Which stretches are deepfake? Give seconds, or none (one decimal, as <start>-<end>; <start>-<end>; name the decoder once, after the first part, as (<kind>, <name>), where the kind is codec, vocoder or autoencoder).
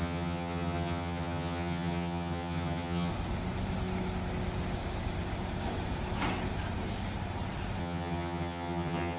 0.0-3.1 (vocoder, HiFi-GAN); 7.8-9.2